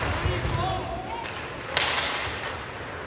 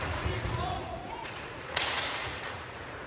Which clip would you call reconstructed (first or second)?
second